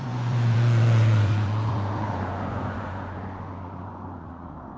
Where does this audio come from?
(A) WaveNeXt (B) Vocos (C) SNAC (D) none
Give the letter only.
B